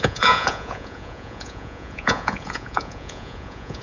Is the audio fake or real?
fake